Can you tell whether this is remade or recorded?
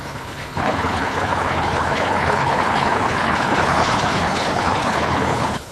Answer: remade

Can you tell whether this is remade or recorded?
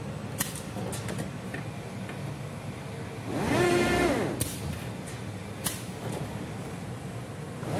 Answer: recorded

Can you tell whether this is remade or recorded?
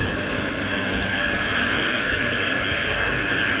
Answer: remade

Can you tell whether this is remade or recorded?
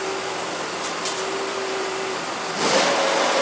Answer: remade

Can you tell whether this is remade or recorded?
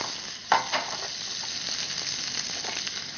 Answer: recorded